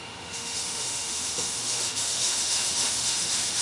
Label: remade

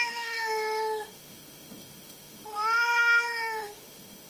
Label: remade